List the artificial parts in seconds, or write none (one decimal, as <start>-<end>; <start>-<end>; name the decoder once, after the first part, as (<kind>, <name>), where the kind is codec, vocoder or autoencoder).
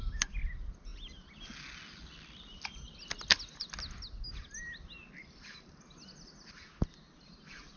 none